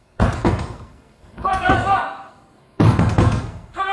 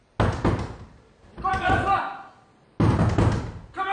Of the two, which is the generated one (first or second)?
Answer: first